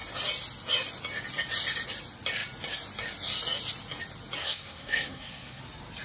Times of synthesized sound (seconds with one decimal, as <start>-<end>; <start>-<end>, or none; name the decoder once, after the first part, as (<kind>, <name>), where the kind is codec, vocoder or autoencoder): 4.4-5.6 (codec, SNAC)